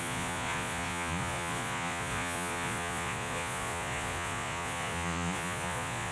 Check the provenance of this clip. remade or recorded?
remade